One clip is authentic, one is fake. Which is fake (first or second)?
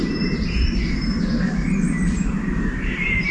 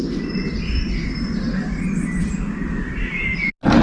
first